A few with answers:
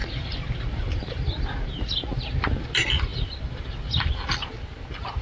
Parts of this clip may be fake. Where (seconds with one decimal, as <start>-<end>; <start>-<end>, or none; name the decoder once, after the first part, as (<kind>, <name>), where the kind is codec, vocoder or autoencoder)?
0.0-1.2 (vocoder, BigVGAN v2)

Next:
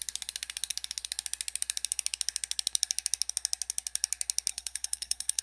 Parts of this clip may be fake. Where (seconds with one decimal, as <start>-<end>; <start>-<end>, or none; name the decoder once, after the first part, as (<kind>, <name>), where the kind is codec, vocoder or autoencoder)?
4.5-5.4 (codec, SNAC)

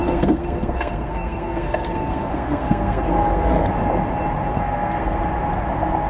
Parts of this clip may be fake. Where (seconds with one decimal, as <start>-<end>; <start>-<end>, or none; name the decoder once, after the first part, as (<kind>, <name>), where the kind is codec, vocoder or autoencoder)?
0.0-3.7 (codec, SNAC); 4.5-5.2

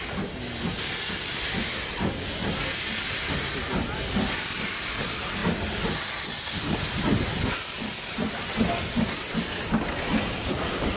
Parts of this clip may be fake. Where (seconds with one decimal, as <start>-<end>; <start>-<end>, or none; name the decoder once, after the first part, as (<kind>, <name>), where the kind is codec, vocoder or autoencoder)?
none

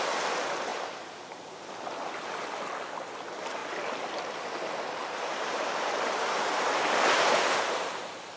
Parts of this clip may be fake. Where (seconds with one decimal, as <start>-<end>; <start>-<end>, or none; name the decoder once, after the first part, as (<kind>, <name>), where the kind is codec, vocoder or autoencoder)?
0.7-1.6 (vocoder, BigVGAN v2); 5.0-8.0

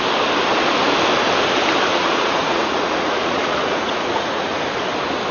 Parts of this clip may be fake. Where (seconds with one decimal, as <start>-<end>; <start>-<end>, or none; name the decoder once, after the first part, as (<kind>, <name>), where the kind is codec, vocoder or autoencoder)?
1.9-4.5 (vocoder, Vocos)

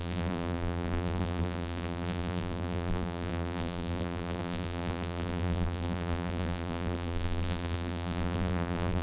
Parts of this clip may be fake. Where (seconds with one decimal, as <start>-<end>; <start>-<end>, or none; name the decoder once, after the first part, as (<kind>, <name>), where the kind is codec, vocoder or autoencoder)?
0.0-9.0 (vocoder, BigVGAN v2)

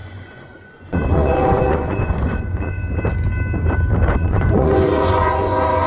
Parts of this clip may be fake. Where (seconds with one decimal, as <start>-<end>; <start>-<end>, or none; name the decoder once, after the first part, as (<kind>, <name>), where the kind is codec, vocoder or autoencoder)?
0.0-2.8 (vocoder, Vocos); 4.1-5.9